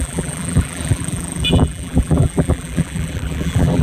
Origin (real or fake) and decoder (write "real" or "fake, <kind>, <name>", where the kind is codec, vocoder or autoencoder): fake, vocoder, BigVGAN v2